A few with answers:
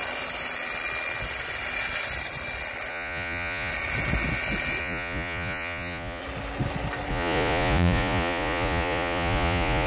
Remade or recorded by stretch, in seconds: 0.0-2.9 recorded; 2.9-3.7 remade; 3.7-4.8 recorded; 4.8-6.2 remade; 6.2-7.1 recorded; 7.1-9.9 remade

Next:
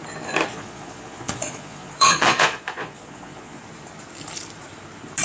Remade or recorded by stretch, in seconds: 0.0-0.5 recorded; 0.5-3.6 remade; 3.6-5.2 recorded